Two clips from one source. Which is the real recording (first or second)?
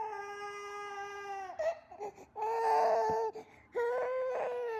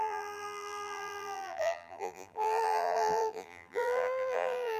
first